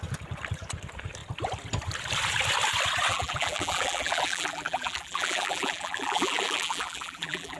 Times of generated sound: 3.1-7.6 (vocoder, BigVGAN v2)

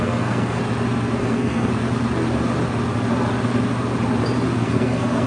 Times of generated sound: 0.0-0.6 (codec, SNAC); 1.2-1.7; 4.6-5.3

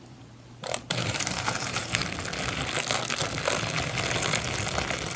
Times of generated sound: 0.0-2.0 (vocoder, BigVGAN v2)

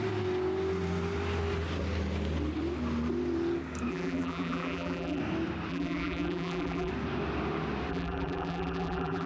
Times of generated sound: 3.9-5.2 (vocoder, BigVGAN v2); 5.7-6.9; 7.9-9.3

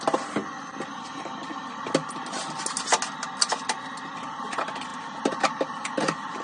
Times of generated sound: none